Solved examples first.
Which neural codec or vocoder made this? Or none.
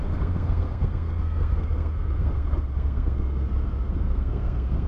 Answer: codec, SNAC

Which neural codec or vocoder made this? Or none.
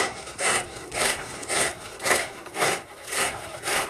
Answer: codec, SNAC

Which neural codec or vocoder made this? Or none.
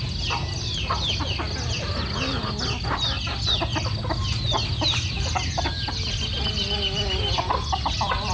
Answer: none